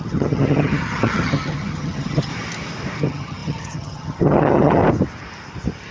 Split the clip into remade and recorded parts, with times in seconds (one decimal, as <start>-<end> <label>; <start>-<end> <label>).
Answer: 0.0-2.3 remade; 2.3-3.0 recorded; 3.0-4.8 remade; 4.8-5.9 recorded